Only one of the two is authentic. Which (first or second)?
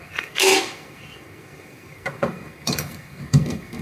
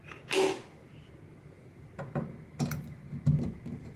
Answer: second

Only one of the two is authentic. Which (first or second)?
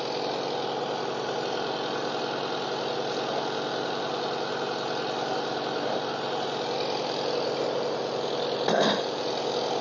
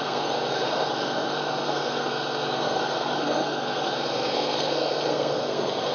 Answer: first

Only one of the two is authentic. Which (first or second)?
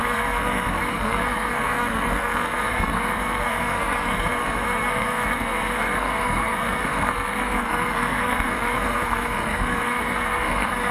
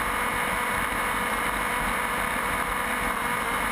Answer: second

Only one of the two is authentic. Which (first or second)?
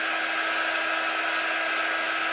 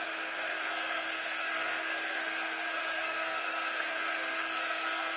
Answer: first